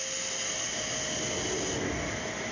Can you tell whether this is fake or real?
real